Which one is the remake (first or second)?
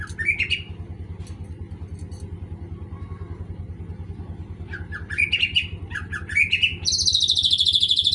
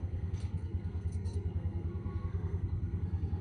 second